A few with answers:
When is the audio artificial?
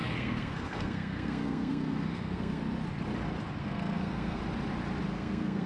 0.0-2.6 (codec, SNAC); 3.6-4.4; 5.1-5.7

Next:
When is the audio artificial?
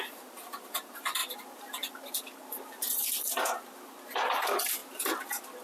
none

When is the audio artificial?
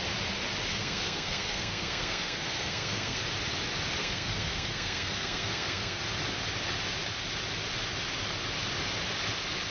0.7-3.2 (codec, SNAC); 4.0-6.0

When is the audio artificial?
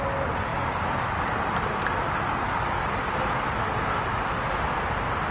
none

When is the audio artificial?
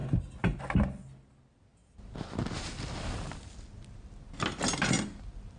none